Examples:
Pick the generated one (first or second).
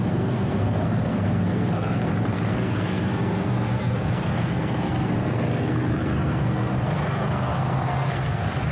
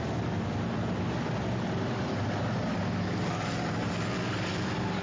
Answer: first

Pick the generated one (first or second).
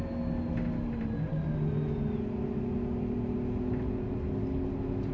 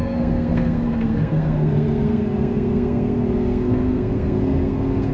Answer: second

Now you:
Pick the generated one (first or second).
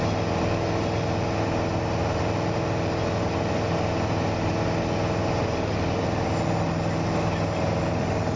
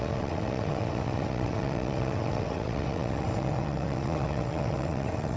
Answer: second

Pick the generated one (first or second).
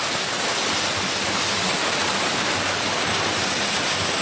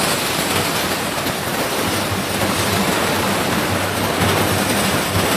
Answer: first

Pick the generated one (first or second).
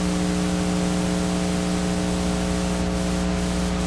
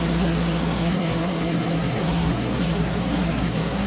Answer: second